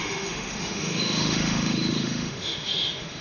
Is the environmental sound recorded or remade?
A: remade